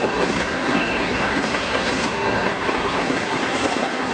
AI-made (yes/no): yes